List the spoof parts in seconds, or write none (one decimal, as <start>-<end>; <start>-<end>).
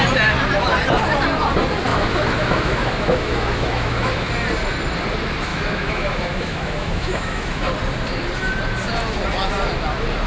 1.9-4.3; 5.5-7.7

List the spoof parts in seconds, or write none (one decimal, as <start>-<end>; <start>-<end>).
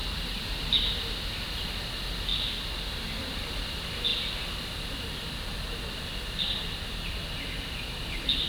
2.3-2.9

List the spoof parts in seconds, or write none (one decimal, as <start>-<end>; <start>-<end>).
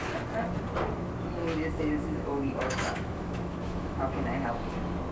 1.4-4.5